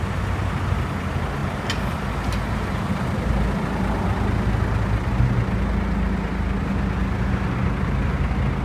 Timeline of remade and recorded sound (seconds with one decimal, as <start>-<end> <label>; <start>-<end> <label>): 0.0-8.6 recorded